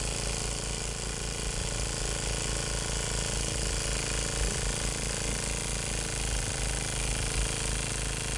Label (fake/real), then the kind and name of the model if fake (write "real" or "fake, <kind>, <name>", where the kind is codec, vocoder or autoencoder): real